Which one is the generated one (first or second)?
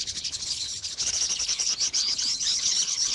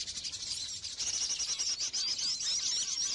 first